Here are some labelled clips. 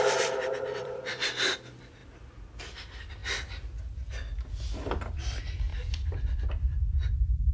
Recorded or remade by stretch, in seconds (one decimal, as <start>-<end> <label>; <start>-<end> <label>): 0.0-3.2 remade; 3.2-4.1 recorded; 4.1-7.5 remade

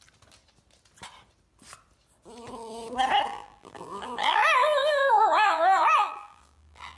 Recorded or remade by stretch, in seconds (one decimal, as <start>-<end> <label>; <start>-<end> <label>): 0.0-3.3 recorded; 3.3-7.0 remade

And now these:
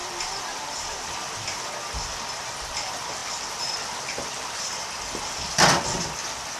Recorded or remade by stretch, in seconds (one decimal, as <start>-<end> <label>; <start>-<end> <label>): 0.0-1.0 remade; 1.0-3.2 recorded; 3.2-6.1 remade; 6.1-6.6 recorded

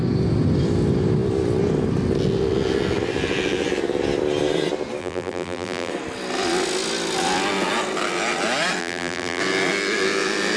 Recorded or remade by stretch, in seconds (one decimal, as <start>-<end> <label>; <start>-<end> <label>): 0.0-5.0 recorded; 5.0-5.9 remade; 5.9-8.8 recorded; 8.8-9.4 remade; 9.4-10.6 recorded